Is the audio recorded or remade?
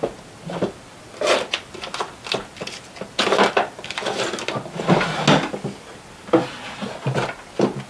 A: recorded